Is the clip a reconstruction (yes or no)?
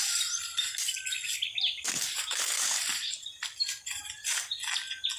no